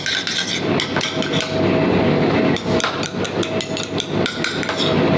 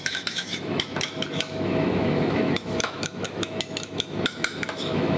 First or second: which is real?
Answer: first